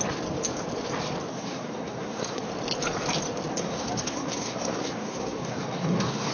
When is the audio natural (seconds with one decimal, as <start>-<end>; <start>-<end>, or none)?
0.0-1.3; 2.5-3.5